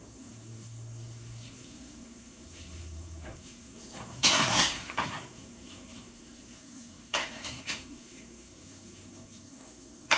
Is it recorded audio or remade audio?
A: remade